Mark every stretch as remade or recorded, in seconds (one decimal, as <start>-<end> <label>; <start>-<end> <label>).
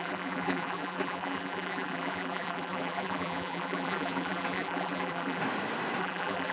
0.0-5.4 remade; 5.4-6.0 recorded; 6.0-6.5 remade